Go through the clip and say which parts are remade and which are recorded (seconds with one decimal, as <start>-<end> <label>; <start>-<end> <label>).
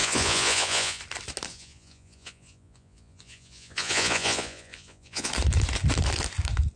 0.0-1.0 remade; 1.0-1.5 recorded; 1.5-5.3 remade; 5.3-6.8 recorded